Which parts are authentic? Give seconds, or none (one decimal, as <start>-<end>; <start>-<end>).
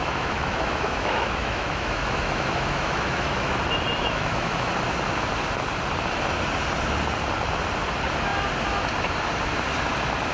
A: 3.6-4.0; 4.7-10.3